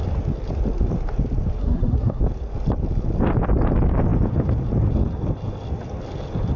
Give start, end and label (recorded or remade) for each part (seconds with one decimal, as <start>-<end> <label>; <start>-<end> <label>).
0.0-1.6 recorded; 1.6-2.2 remade; 2.2-6.6 recorded